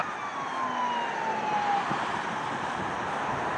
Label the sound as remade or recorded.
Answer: recorded